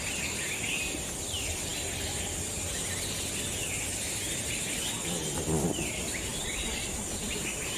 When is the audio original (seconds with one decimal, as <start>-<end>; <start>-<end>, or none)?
0.0-7.8